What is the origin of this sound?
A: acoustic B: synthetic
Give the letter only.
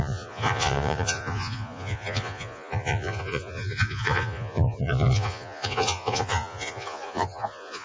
B